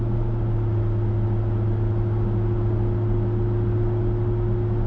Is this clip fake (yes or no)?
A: no